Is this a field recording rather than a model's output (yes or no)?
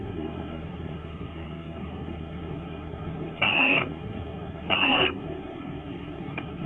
no